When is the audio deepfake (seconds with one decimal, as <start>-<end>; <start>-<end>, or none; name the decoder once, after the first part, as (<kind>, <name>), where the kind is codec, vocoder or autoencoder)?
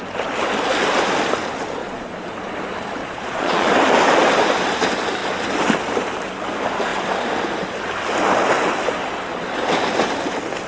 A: 1.8-2.5 (vocoder, Vocos); 3.0-3.7